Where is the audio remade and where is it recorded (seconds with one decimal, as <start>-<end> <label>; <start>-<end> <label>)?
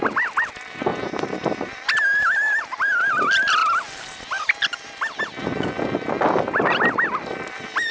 0.0-7.9 recorded